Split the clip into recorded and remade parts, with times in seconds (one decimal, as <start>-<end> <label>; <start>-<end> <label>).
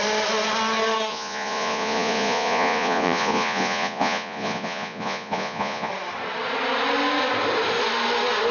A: 0.0-1.1 recorded; 1.1-5.9 remade; 5.9-8.5 recorded